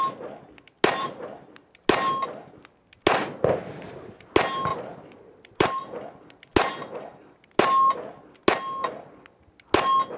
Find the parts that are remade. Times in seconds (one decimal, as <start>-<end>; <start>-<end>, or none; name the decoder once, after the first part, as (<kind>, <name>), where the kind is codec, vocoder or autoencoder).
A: 4.7-5.8 (vocoder, BigVGAN v2)